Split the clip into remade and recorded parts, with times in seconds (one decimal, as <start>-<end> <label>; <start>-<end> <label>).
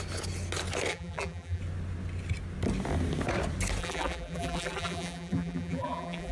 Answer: 0.0-0.9 recorded; 0.9-1.6 remade; 1.6-3.8 recorded; 3.8-6.3 remade